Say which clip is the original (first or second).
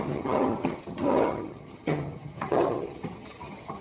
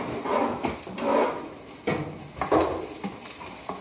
second